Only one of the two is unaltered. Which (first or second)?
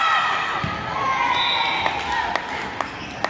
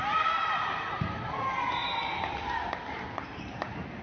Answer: first